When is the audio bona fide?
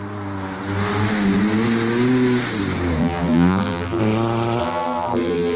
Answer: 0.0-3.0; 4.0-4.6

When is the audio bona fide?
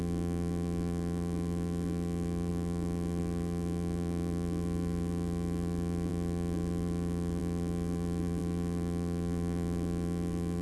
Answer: none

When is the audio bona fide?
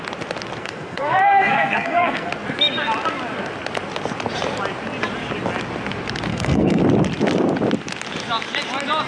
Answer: 0.0-0.6; 2.3-6.3; 6.8-9.1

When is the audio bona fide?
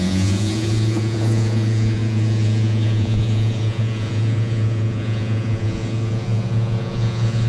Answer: none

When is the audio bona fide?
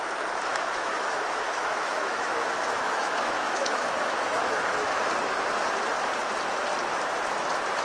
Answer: 0.0-0.5; 5.1-7.8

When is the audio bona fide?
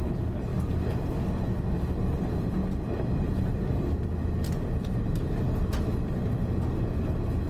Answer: 0.0-7.5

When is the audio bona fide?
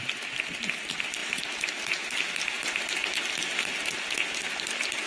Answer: 0.0-5.1